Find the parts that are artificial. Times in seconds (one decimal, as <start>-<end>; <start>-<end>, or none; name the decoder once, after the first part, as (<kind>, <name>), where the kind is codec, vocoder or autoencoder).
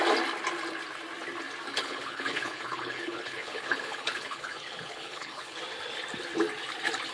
1.7-5.6 (codec, HILCodec)